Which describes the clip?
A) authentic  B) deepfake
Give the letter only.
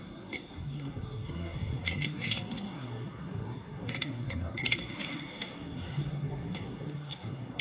B